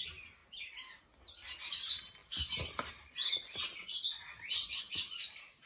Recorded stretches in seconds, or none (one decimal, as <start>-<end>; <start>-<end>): 0.0-5.7